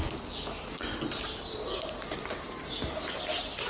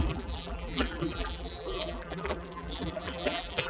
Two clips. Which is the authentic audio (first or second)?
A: first